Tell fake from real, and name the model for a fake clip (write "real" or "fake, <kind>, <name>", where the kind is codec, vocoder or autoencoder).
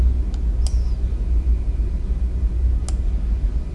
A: real